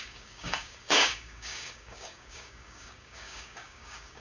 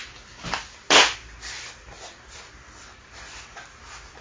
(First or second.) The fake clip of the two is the first